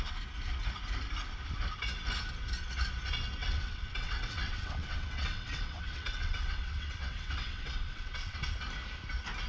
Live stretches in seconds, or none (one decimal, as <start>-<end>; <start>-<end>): 0.0-3.4; 8.5-9.5